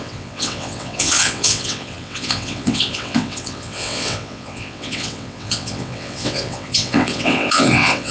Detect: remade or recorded remade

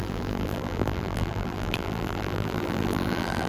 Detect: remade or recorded remade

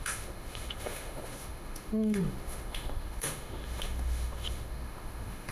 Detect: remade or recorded remade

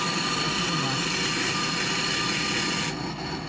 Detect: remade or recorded recorded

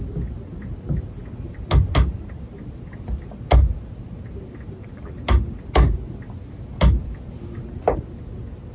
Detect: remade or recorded recorded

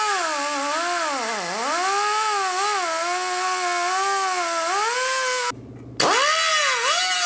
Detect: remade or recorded recorded